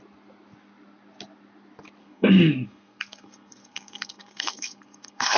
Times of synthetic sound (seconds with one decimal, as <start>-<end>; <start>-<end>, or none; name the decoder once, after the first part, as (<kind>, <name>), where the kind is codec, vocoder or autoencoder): 2.0-5.4 (codec, SNAC)